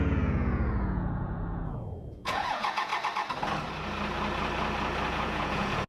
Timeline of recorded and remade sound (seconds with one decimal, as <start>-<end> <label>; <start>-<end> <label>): 0.0-2.9 remade; 2.9-5.1 recorded; 5.1-5.9 remade